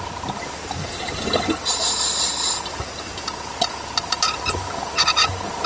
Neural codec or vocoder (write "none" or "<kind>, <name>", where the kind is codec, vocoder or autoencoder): none